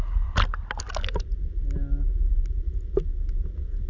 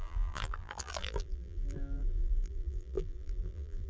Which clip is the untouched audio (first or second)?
first